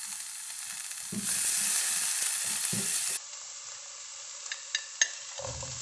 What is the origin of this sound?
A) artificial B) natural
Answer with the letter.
B